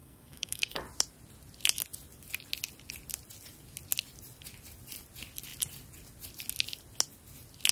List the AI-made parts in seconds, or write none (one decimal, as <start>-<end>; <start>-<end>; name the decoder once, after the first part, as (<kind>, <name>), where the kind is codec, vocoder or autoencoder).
0.0-0.8 (codec, SNAC)